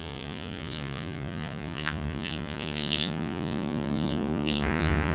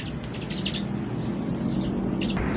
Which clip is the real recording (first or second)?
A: second